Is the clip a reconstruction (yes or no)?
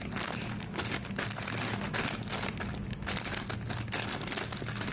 no